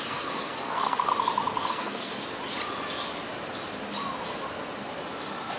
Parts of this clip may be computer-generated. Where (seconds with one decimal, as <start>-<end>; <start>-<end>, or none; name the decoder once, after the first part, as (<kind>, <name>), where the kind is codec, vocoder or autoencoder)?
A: 0.0-1.1 (codec, SNAC); 1.7-2.1